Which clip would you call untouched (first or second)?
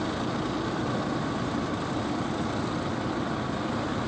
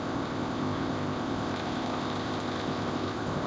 first